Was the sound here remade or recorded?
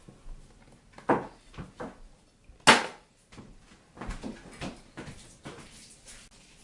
recorded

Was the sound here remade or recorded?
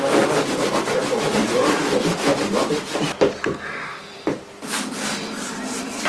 remade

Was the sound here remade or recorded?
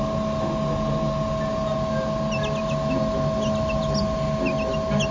recorded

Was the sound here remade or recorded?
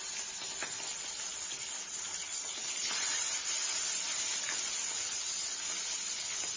recorded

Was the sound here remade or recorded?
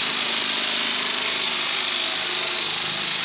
recorded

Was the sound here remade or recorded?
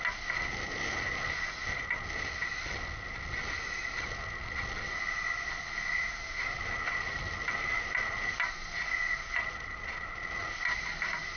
recorded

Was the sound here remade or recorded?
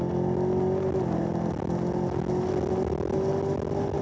recorded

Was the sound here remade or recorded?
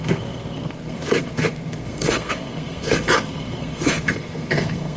remade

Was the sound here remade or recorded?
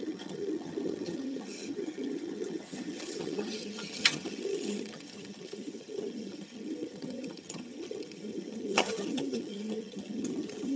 remade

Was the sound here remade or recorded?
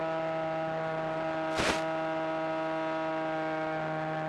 recorded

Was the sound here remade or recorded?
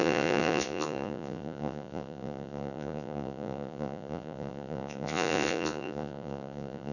remade